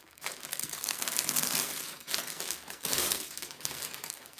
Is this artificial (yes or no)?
yes